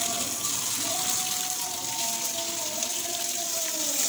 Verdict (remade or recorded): recorded